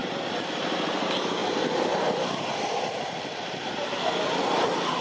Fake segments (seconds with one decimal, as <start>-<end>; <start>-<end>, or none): none